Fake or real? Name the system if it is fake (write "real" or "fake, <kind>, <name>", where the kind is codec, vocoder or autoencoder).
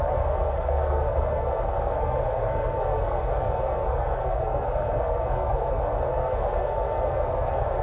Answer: fake, codec, SNAC